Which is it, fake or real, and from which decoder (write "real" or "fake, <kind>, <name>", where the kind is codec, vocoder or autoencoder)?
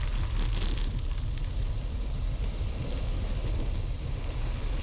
real